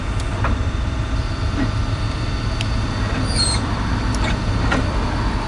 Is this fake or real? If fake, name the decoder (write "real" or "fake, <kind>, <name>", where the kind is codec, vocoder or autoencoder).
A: fake, vocoder, BigVGAN v2